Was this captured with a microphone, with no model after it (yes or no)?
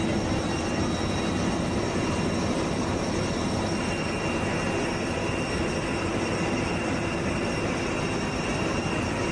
yes